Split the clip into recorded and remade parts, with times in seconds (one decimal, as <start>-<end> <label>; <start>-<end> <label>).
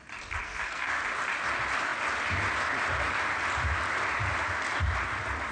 0.0-0.4 recorded; 0.4-1.0 remade; 1.0-5.5 recorded